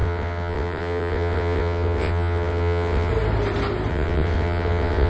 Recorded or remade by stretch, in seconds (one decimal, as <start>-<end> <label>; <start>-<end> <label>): 0.0-3.1 remade; 3.1-3.9 recorded; 3.9-5.1 remade